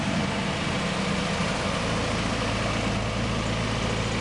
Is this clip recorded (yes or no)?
yes